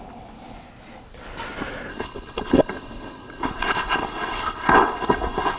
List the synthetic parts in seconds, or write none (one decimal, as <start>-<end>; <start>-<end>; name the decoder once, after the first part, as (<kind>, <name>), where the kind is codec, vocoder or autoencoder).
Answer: 1.9-5.6 (codec, HILCodec)